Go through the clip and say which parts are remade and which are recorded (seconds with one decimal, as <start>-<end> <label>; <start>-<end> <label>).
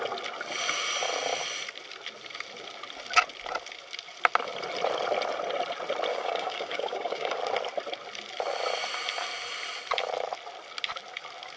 0.0-6.1 recorded; 6.1-7.4 remade; 7.4-11.6 recorded